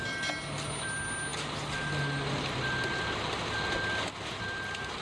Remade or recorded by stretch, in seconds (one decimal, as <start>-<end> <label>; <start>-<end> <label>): 0.0-5.0 recorded